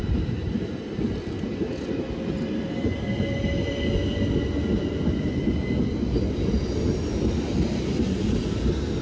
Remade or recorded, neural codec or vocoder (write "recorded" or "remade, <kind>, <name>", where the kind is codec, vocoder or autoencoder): recorded